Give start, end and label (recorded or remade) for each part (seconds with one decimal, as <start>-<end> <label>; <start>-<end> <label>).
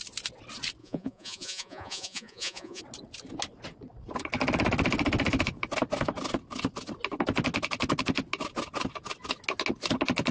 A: 0.0-0.8 recorded; 0.8-2.8 remade; 2.8-10.3 recorded